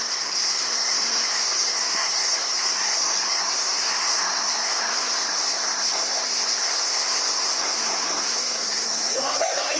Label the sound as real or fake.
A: fake